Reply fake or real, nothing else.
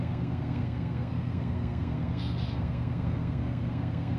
fake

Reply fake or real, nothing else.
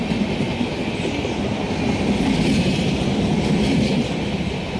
real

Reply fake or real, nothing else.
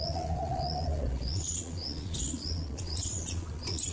fake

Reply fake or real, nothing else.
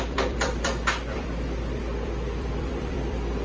fake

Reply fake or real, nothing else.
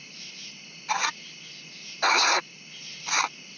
real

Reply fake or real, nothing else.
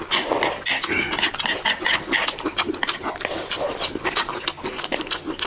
real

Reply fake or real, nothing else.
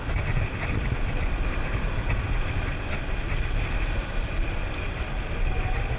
real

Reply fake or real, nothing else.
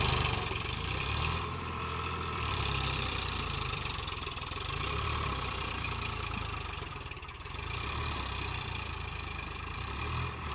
fake